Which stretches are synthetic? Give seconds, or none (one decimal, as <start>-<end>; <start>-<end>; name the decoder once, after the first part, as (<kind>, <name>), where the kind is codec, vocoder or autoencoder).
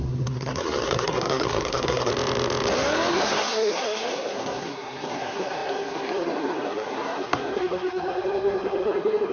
0.0-2.1 (codec, SNAC); 3.1-9.3